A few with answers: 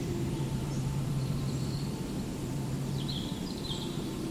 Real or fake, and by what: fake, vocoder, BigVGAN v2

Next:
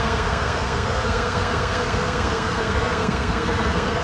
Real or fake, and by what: fake, codec, SNAC